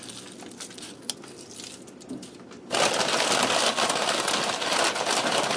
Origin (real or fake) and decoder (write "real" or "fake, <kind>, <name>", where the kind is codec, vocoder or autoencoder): real